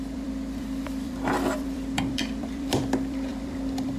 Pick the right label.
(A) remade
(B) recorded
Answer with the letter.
A